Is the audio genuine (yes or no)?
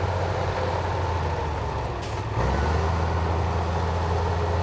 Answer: yes